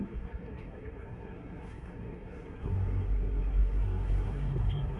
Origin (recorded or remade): remade